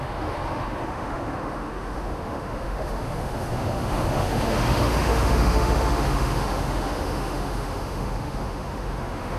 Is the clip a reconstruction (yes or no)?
yes